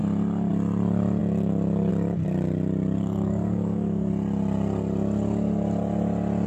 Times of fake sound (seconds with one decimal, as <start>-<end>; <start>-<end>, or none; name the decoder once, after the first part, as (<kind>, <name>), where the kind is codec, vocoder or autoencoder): 3.0-4.1 (codec, DAC)